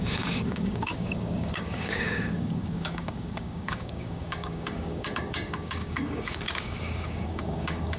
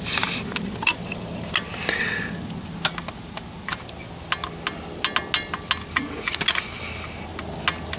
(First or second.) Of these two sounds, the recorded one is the second